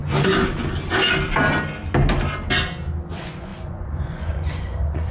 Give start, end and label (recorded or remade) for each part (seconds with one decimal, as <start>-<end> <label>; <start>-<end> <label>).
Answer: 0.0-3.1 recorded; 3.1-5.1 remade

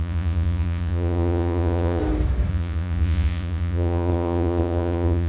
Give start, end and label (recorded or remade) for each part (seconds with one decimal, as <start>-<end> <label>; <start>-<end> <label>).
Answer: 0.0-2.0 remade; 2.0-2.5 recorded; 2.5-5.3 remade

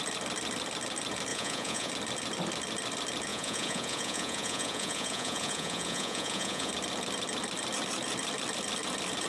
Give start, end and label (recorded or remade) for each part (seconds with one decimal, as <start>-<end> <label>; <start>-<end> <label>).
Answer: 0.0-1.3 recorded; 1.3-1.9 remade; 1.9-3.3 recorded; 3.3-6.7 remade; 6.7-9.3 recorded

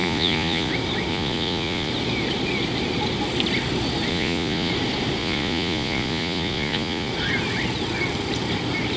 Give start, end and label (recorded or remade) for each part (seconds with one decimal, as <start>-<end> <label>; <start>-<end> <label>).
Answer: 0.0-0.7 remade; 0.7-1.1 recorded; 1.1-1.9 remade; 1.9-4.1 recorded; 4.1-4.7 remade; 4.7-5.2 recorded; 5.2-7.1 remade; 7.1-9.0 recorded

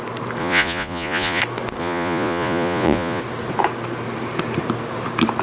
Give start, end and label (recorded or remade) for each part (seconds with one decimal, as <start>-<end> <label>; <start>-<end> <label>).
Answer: 0.0-0.4 recorded; 0.4-1.4 remade; 1.4-1.8 recorded; 1.8-3.2 remade; 3.2-5.4 recorded

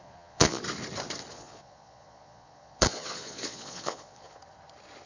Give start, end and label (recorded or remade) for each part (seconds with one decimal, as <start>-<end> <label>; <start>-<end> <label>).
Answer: 0.0-0.6 remade; 0.6-1.3 recorded; 1.3-4.4 remade; 4.4-5.1 recorded

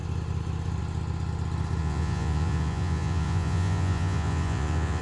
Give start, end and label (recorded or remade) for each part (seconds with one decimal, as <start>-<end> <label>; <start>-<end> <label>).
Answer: 0.0-1.8 recorded; 1.8-5.0 remade

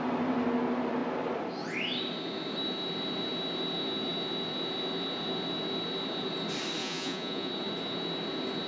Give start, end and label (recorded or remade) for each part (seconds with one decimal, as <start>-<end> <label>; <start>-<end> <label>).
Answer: 0.0-6.8 recorded; 6.8-7.5 remade; 7.5-8.7 recorded